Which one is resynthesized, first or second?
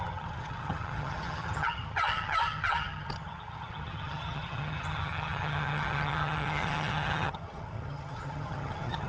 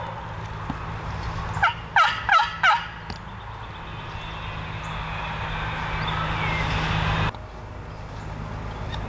first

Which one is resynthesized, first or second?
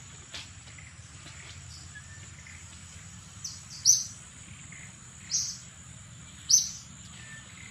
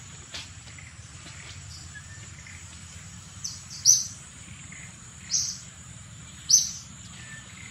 second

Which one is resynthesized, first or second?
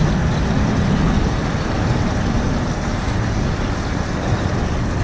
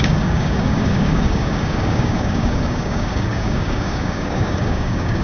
second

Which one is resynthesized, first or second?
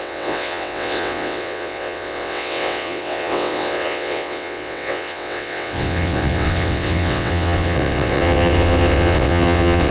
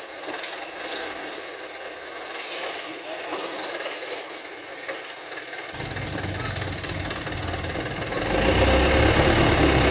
first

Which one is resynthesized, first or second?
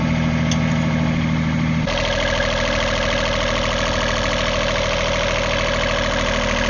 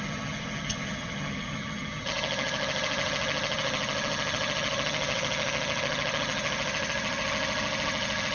second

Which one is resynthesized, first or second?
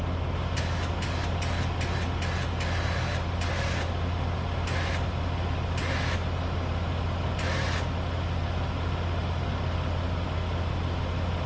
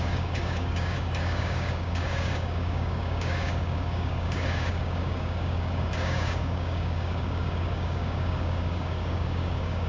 second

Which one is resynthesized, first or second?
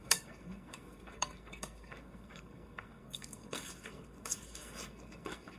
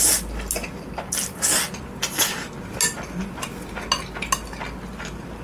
first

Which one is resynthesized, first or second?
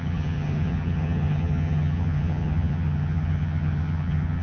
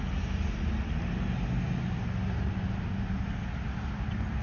first